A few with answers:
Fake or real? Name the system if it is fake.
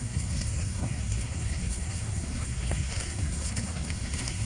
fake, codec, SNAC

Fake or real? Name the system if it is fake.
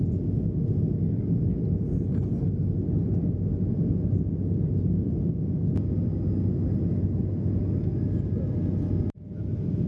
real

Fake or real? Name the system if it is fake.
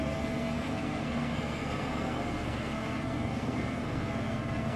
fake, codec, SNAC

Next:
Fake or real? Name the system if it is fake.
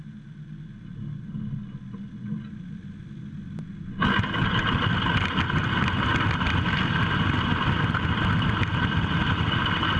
real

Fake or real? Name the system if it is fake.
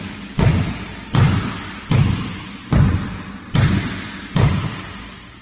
real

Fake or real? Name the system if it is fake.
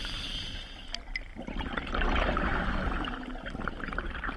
real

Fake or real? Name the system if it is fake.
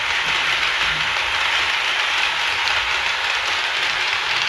real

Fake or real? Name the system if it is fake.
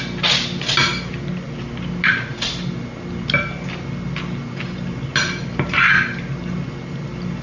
real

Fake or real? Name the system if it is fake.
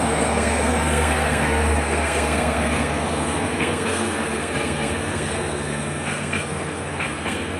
fake, codec, SNAC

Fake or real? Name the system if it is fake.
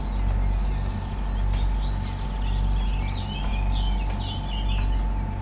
real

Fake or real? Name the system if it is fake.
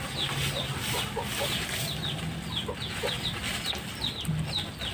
real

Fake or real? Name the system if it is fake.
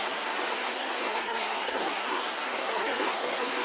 fake, codec, SNAC